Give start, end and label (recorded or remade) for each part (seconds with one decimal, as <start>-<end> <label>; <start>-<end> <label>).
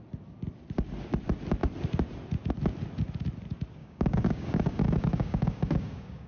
0.0-3.8 recorded; 3.8-6.3 remade